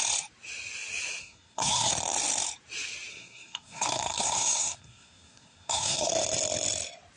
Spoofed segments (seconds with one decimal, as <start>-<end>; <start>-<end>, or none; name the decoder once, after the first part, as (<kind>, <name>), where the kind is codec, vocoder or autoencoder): 1.2-1.9 (codec, SNAC); 3.1-6.1